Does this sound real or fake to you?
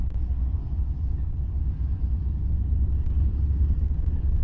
real